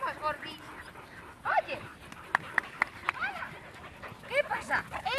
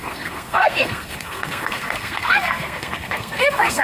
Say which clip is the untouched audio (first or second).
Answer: first